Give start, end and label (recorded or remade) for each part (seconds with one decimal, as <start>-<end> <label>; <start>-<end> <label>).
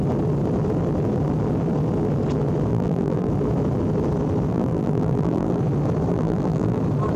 0.0-2.7 recorded; 2.7-3.3 remade; 3.3-4.5 recorded; 4.5-5.6 remade; 5.6-6.1 recorded; 6.1-6.8 remade; 6.8-7.2 recorded